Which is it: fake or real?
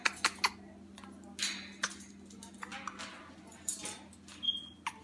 real